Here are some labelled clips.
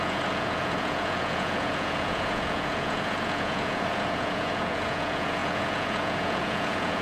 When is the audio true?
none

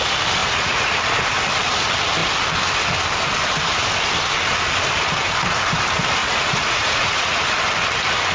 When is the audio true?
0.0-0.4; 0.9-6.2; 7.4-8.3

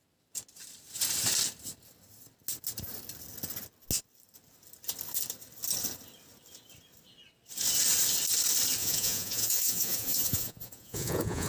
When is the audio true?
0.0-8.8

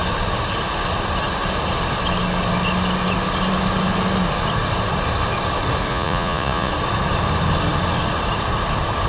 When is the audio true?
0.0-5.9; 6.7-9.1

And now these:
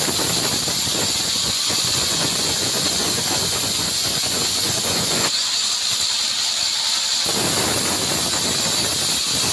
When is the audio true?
0.0-0.9; 5.7-9.5

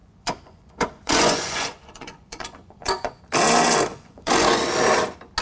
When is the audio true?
3.2-3.9; 4.6-5.4

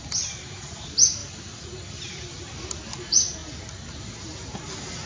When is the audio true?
0.0-5.1

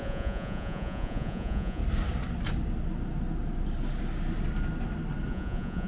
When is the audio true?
1.8-5.3